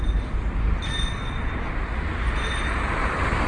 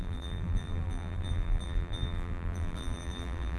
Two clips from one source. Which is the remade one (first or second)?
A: second